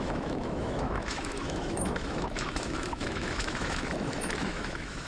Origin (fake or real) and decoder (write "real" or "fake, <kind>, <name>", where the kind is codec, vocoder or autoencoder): fake, autoencoder, DAC-VAE